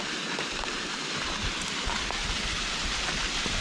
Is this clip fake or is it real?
real